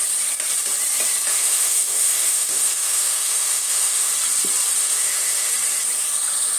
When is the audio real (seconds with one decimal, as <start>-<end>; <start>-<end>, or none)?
0.0-1.3; 4.1-4.8; 5.5-6.6